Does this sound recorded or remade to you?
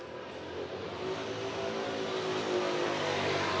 recorded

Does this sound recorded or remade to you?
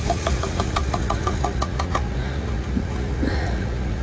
remade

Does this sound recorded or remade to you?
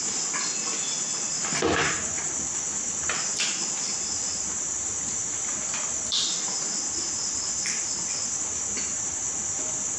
recorded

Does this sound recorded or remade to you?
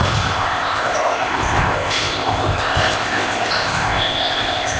remade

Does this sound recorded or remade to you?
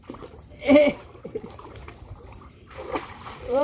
remade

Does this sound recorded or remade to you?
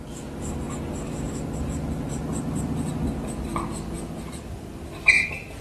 recorded